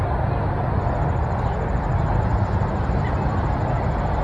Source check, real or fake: real